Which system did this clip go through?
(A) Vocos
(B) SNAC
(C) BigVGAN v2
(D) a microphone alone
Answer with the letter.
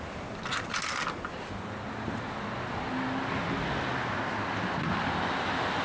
D